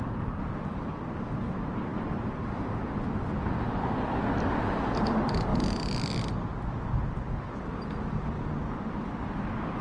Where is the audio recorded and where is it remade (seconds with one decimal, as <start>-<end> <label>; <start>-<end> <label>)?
0.0-1.9 recorded; 1.9-2.8 remade; 2.8-9.8 recorded